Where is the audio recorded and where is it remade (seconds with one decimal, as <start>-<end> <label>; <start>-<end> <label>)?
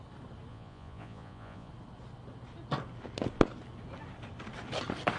0.0-0.5 recorded; 0.5-1.7 remade; 1.7-5.2 recorded